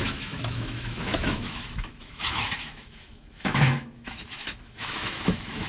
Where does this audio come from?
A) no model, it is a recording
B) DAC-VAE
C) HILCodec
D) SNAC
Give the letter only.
B